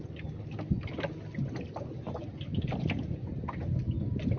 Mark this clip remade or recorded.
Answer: recorded